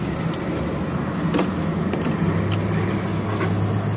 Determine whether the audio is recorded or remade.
recorded